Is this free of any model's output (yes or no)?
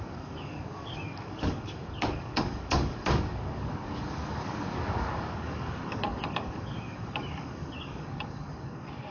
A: no